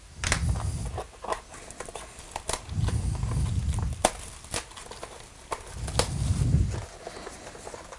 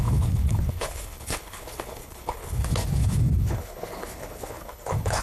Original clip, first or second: first